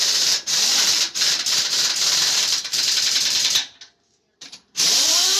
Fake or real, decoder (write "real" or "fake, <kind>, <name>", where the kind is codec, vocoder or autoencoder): fake, vocoder, BigVGAN v2